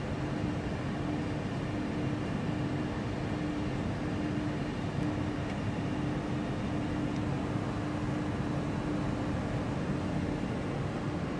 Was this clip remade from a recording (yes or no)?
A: no